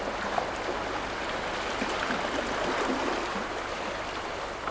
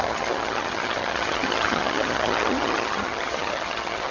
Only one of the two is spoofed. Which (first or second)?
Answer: second